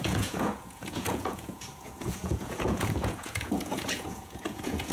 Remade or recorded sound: remade